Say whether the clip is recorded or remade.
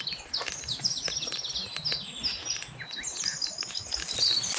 recorded